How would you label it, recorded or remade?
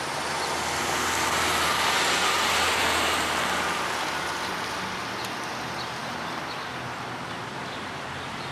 remade